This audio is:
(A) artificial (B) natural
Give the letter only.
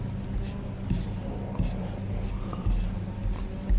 B